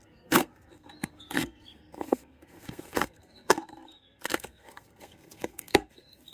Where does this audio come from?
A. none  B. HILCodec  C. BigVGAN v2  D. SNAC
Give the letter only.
D